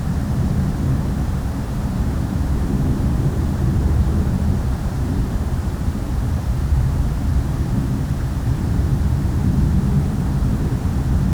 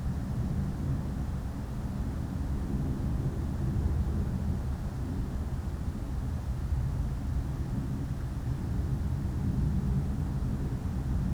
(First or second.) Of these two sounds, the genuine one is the second